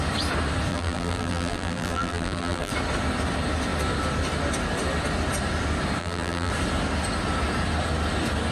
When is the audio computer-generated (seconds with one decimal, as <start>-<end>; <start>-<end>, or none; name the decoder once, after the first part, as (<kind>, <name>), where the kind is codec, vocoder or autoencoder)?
0.7-2.7 (vocoder, BigVGAN v2); 6.0-6.5